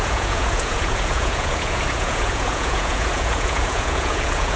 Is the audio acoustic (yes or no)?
no